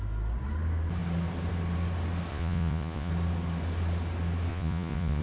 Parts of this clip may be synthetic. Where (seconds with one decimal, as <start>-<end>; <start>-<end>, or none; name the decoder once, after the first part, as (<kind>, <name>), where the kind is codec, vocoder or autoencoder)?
2.3-3.1 (vocoder, Vocos); 4.5-5.2